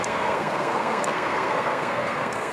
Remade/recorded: remade